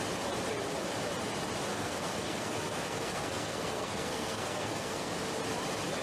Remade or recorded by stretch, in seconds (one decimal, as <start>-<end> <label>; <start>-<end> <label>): 0.0-1.7 recorded; 1.7-5.1 remade; 5.1-6.0 recorded